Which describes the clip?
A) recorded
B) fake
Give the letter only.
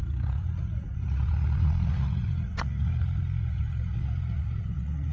B